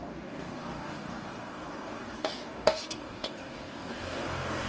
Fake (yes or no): yes